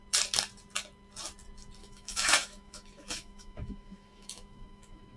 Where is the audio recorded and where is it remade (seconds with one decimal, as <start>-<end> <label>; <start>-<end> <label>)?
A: 0.0-1.8 recorded; 1.8-5.2 remade